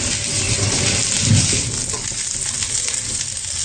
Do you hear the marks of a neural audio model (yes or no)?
no